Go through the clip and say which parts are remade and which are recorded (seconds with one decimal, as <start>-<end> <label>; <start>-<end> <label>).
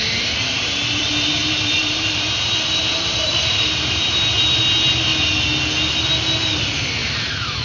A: 0.0-5.1 remade; 5.1-6.6 recorded; 6.6-7.6 remade